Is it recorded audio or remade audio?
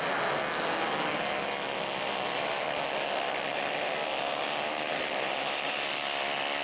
recorded